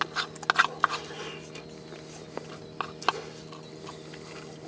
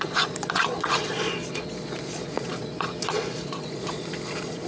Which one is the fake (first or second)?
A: second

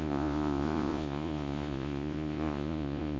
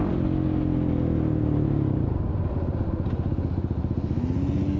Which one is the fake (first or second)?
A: first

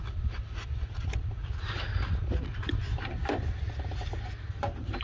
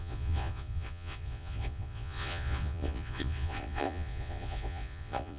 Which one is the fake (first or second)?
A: second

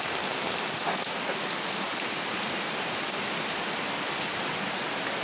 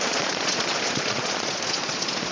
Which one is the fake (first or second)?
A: second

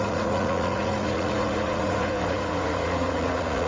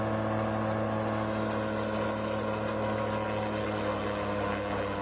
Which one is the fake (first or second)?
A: first